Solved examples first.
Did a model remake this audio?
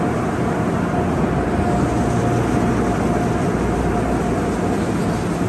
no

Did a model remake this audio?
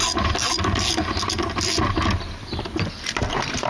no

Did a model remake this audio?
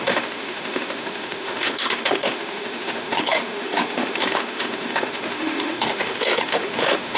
yes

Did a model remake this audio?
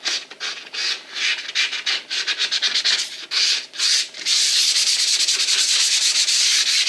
no